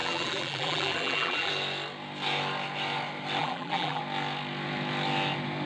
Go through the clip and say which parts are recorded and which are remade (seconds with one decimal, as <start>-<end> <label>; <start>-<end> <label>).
0.0-1.5 remade; 1.5-3.4 recorded; 3.4-4.0 remade; 4.0-5.7 recorded